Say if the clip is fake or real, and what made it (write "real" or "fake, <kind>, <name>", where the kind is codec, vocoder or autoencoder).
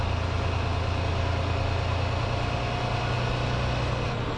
real